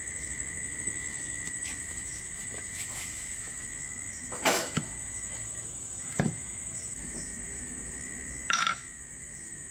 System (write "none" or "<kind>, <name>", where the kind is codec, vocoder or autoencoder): autoencoder, DAC-VAE